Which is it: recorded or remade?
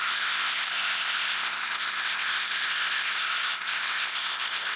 remade